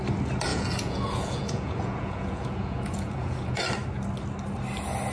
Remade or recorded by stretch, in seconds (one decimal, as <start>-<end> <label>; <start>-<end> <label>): 0.0-0.5 recorded; 0.5-3.6 remade; 3.6-5.1 recorded